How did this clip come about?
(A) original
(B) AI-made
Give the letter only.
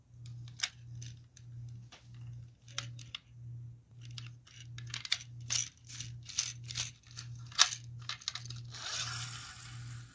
A